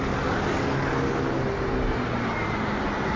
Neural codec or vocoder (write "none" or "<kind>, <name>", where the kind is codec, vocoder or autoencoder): none